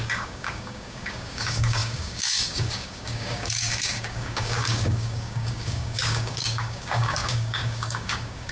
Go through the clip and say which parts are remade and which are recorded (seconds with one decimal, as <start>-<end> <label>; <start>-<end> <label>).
0.0-8.5 remade